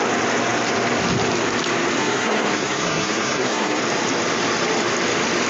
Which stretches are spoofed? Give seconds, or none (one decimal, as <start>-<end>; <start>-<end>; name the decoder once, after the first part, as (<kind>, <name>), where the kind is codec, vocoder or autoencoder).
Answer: 2.0-3.8 (codec, SNAC)